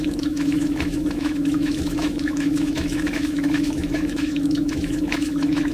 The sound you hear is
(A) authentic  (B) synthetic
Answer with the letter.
B